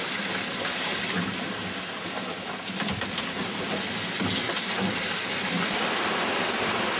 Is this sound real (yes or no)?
yes